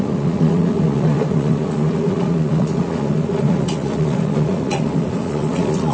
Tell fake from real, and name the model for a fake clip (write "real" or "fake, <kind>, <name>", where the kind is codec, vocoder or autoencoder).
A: fake, vocoder, Vocos